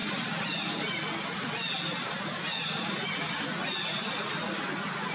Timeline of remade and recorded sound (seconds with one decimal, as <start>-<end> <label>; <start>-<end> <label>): 0.0-5.1 recorded